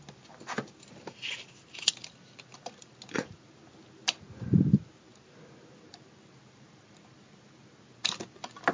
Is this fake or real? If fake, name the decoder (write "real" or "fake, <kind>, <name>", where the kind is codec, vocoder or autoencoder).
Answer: real